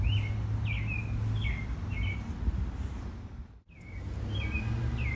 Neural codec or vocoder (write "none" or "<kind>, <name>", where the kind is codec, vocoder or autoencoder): none